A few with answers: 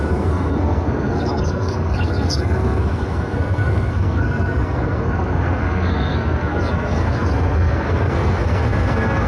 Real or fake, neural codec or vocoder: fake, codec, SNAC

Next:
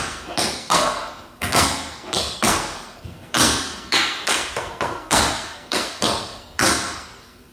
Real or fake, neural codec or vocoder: fake, codec, SNAC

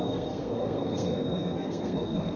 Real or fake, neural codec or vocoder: fake, codec, SNAC